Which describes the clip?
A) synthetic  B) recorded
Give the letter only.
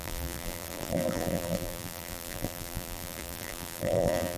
A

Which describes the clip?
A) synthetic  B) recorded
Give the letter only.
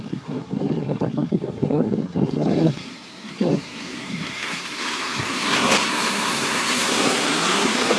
A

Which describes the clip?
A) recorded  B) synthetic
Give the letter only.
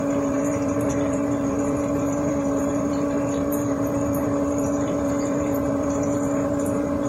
B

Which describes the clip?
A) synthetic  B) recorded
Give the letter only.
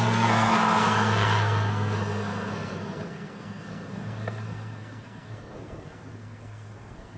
A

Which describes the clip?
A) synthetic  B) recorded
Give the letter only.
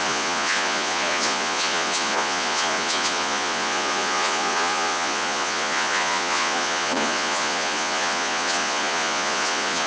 A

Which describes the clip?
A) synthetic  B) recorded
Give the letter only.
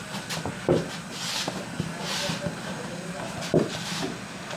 B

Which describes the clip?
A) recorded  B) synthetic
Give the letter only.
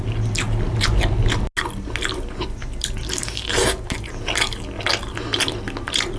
A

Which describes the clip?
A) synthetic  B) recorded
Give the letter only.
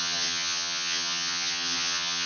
A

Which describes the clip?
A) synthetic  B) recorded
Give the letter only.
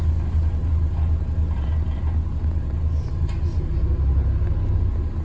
B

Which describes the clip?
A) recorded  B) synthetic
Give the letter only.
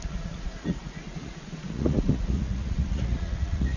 B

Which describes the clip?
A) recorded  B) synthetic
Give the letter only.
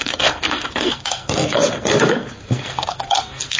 B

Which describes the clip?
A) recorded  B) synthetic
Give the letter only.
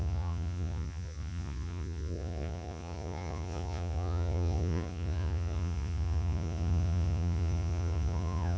B